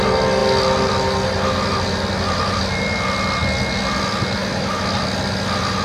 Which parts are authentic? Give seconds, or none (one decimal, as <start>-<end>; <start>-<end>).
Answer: 0.0-5.8